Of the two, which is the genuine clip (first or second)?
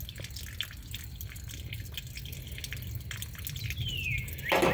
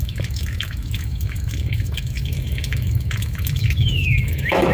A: first